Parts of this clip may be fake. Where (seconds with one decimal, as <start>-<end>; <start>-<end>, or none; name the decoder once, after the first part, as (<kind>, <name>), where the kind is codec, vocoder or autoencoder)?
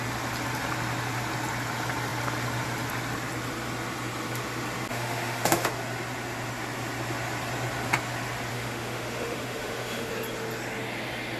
4.9-5.7 (autoencoder, DAC-VAE); 8.5-10.1